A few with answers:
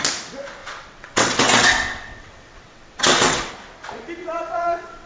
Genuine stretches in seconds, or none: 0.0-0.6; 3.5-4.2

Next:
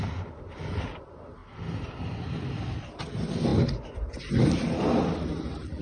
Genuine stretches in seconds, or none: 0.0-5.8

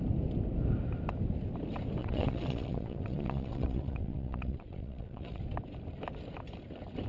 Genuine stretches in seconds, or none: 0.0-2.0; 5.4-7.1

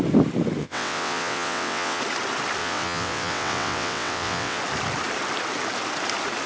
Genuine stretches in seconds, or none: 0.0-0.6; 2.0-2.6; 4.6-6.5

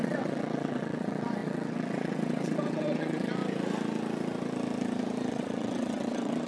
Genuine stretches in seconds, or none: 3.4-5.3

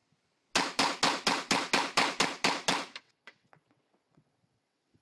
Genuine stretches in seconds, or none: 0.0-3.0